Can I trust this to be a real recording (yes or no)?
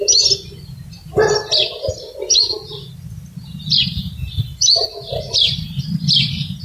yes